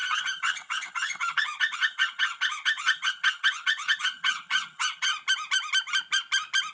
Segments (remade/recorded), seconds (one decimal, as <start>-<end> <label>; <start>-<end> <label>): 0.0-5.1 remade; 5.1-6.7 recorded